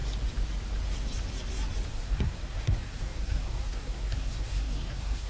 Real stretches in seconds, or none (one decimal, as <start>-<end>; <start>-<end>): 0.0-1.9